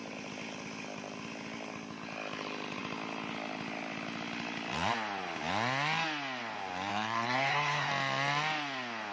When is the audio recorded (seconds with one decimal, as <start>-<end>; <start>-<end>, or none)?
0.0-6.9; 7.9-9.1